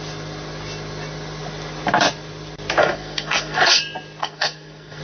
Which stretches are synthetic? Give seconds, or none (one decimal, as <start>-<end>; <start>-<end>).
2.8-3.8; 4.2-5.0